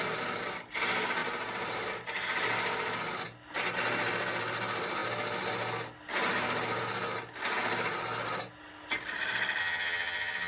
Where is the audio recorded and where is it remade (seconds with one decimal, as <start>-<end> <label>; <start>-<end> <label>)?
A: 0.0-9.6 recorded; 9.6-10.5 remade